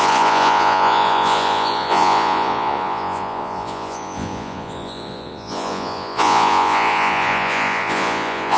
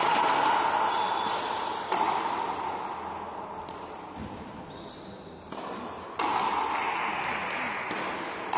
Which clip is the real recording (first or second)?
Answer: second